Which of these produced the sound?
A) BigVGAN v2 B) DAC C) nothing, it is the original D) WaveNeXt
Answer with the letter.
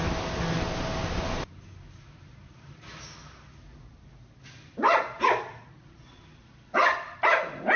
C